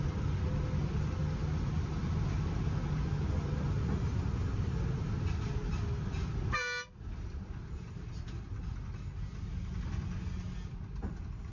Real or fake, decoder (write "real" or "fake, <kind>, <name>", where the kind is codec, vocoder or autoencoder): real